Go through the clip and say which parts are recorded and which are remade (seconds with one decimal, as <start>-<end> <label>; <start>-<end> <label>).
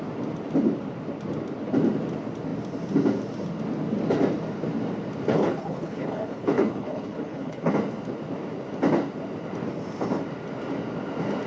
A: 0.0-5.3 recorded; 5.3-7.7 remade; 7.7-11.5 recorded